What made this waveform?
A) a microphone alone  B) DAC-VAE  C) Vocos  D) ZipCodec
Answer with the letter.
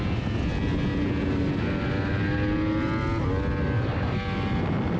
A